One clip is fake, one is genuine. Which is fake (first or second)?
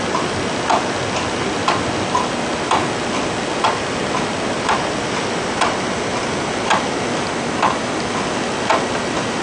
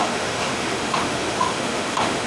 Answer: second